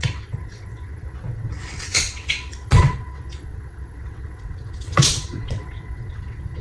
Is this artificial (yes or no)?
yes